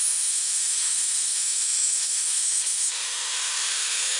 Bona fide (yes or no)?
no